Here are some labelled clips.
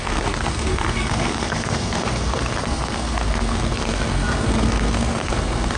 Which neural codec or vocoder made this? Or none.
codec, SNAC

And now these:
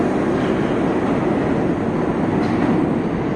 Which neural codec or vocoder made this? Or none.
none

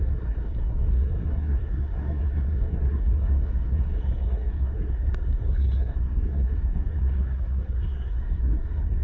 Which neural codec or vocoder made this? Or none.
codec, SNAC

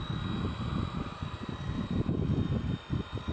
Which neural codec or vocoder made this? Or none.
none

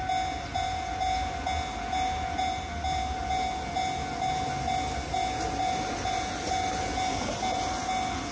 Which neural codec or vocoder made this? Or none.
none